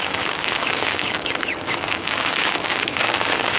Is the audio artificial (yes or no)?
yes